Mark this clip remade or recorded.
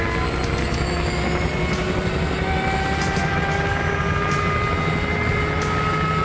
recorded